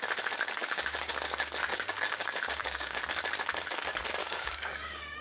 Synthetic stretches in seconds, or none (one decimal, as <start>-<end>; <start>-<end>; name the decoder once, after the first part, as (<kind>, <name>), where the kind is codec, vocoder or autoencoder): 0.6-1.1 (codec, DAC); 1.7-3.0; 4.2-5.2